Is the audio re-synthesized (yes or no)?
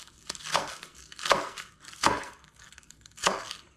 yes